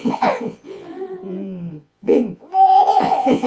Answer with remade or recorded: remade